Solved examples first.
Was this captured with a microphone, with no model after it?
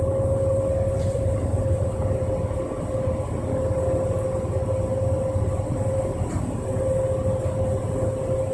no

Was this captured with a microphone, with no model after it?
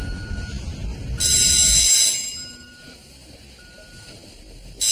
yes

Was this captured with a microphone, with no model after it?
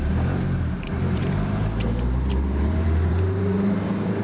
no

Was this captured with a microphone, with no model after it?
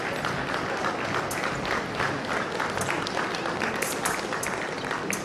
yes